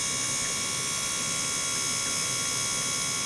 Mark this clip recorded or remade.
recorded